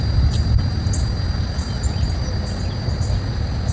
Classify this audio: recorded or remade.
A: recorded